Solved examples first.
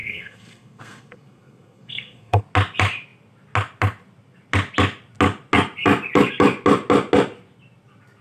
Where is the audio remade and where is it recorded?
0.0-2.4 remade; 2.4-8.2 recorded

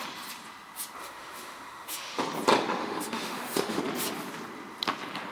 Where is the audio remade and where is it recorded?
0.0-1.0 recorded; 1.0-2.2 remade; 2.2-2.8 recorded; 2.8-3.8 remade; 3.8-5.3 recorded

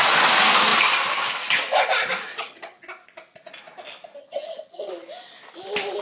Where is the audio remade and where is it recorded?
0.0-2.3 recorded; 2.3-2.8 remade; 2.8-4.2 recorded; 4.2-4.9 remade; 4.9-6.0 recorded

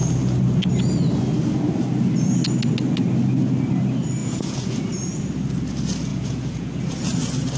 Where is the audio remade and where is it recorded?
0.0-4.2 recorded; 4.2-4.8 remade; 4.8-6.1 recorded; 6.1-6.8 remade; 6.8-7.6 recorded

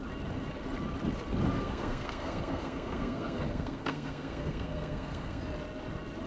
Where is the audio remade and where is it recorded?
0.0-1.6 recorded; 1.6-5.4 remade; 5.4-6.3 recorded

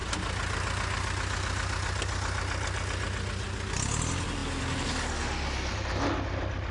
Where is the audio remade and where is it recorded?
0.0-6.7 recorded

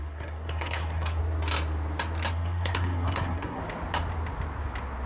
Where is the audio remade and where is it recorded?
0.0-1.2 remade; 1.2-2.3 recorded; 2.3-3.6 remade; 3.6-5.1 recorded

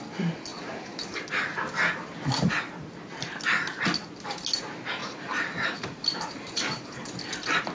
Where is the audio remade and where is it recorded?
0.0-0.5 recorded; 0.5-2.5 remade; 2.5-5.0 recorded; 5.0-6.9 remade; 6.9-7.7 recorded